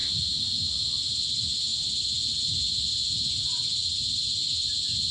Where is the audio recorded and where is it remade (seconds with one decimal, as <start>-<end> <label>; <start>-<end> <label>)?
0.0-5.1 recorded